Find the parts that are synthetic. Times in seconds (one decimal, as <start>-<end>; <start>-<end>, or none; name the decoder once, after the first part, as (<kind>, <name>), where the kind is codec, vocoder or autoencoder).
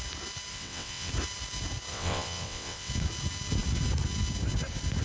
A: 0.5-1.1 (vocoder, WaveNeXt); 1.9-2.9